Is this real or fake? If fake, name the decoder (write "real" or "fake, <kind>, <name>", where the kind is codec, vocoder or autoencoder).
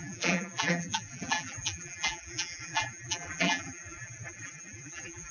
fake, vocoder, BigVGAN v2